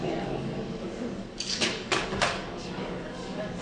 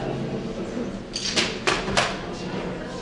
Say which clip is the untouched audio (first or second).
second